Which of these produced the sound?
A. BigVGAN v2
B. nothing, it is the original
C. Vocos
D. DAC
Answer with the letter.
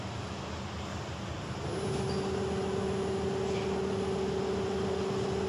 B